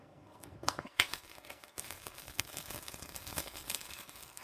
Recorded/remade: remade